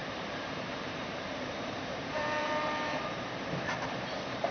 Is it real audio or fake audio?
fake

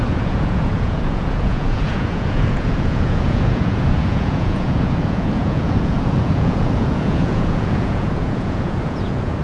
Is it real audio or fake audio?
fake